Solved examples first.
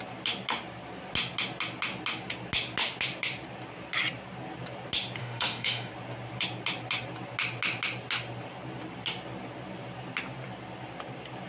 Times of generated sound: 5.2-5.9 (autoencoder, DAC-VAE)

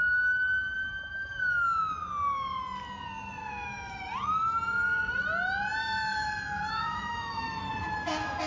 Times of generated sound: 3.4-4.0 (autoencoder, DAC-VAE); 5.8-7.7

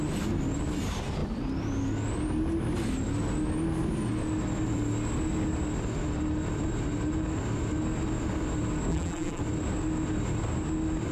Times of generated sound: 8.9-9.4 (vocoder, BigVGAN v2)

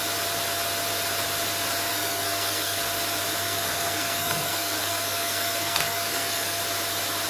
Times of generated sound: 1.9-2.8 (codec, SNAC); 3.4-6.6